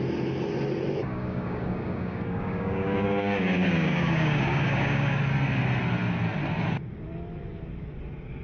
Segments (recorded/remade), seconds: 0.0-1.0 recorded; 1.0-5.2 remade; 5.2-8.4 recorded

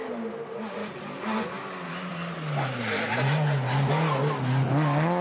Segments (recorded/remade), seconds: 0.0-5.2 recorded

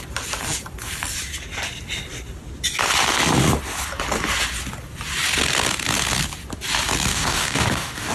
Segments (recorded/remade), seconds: 0.0-7.1 recorded; 7.1-8.1 remade